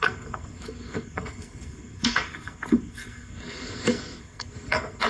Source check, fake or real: fake